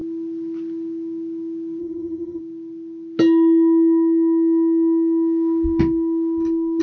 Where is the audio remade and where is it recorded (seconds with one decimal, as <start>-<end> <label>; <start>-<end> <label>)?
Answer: 0.0-1.8 recorded; 1.8-2.4 remade; 2.4-6.8 recorded